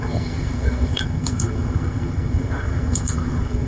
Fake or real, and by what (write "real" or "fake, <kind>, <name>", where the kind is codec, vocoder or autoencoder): fake, codec, SNAC